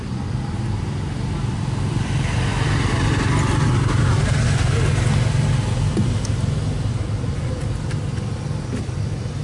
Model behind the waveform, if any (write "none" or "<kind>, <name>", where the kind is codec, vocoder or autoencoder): none